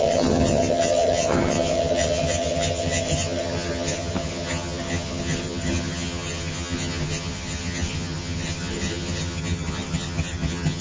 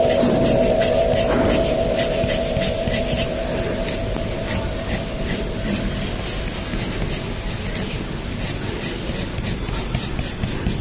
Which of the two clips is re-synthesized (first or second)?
first